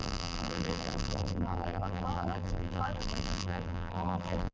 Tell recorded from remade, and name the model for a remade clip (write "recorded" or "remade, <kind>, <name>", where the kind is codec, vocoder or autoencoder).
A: remade, vocoder, BigVGAN v2